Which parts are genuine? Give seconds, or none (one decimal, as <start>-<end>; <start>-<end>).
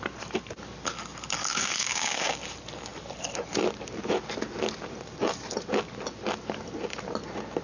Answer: 0.0-1.4; 2.4-7.6